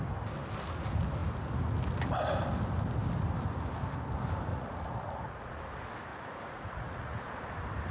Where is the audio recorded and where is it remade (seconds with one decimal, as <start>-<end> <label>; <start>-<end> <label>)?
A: 0.0-4.5 recorded; 4.5-5.6 remade; 5.6-6.1 recorded; 6.1-7.3 remade; 7.3-7.9 recorded